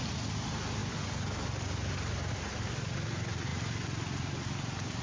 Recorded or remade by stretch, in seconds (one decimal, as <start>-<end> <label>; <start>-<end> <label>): 0.0-5.0 recorded